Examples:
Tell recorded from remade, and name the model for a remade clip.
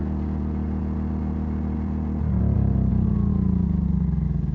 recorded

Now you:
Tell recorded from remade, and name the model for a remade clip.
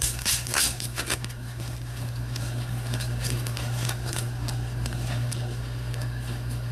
remade, codec, SNAC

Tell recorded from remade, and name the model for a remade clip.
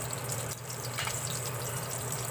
remade, vocoder, BigVGAN v2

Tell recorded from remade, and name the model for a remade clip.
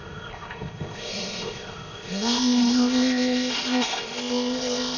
remade, codec, ZipCodec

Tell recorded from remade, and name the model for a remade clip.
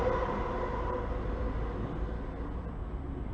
recorded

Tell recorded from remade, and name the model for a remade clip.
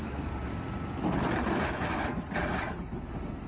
recorded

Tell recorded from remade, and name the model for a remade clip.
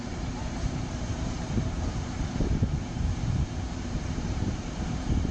remade, vocoder, BigVGAN v2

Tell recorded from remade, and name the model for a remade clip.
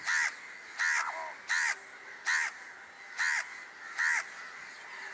recorded